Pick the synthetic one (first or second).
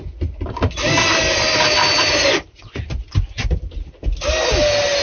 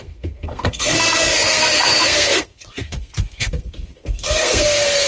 second